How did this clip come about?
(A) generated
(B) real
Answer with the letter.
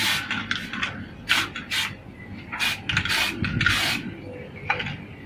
B